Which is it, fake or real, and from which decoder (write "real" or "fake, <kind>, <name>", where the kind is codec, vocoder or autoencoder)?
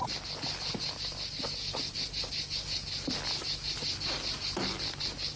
real